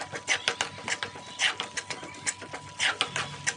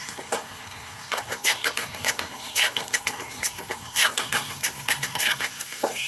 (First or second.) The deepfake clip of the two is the second